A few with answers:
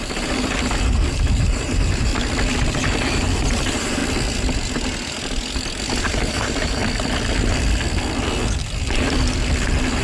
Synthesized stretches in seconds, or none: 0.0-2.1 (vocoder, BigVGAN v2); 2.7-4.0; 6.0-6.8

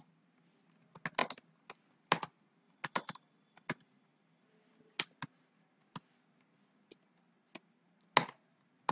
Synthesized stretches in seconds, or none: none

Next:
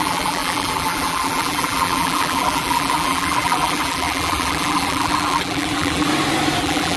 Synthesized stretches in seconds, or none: 0.0-6.1 (vocoder, BigVGAN v2); 6.6-7.0

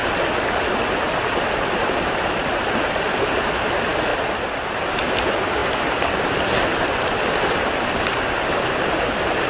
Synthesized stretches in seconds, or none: 5.6-6.3 (vocoder, BigVGAN v2)

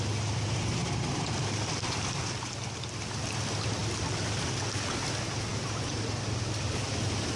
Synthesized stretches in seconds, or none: 0.8-2.4 (vocoder, BigVGAN v2); 5.5-6.9

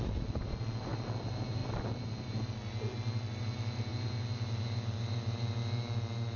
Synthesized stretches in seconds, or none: none